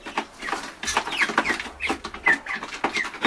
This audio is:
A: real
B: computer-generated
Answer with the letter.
A